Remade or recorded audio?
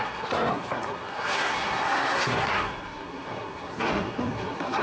remade